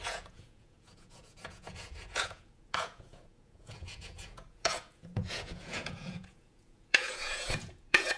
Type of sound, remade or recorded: remade